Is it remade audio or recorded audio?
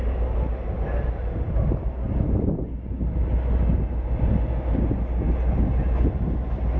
recorded